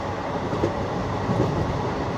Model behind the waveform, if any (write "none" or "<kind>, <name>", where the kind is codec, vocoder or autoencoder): none